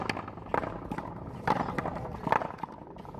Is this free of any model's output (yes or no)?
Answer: yes